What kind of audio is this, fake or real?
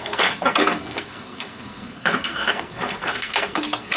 fake